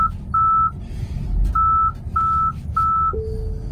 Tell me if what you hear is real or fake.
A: real